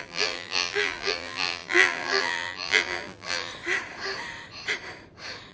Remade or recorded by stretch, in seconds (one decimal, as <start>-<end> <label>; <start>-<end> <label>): 0.0-3.5 remade; 3.5-5.5 recorded